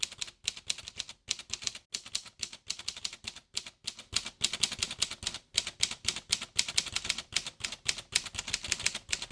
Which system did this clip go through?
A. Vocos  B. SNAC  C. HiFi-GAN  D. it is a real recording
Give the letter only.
D